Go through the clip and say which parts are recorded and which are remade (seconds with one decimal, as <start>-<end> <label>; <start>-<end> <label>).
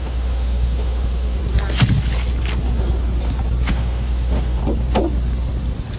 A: 0.0-1.4 remade; 1.4-3.7 recorded; 3.7-4.6 remade; 4.6-6.0 recorded